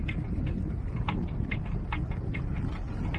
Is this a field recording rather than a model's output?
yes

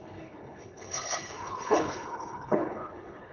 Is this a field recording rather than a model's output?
no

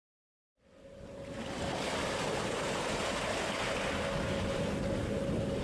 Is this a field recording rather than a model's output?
yes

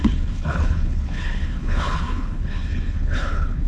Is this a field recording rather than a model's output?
no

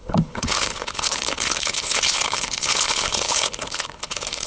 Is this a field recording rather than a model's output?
no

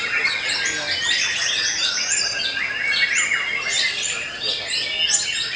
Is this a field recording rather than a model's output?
yes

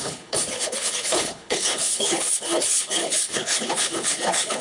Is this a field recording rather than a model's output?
no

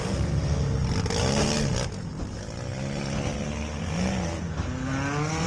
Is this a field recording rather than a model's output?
yes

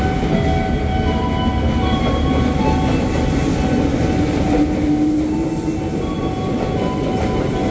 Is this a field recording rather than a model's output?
yes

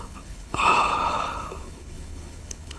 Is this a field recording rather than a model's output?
no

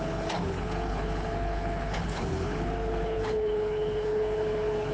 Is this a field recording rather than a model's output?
no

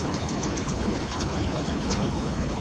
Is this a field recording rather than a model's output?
no